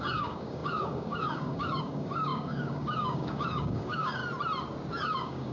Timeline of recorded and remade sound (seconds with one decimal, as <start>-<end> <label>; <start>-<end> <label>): 0.0-4.2 remade; 4.2-4.9 recorded; 4.9-5.5 remade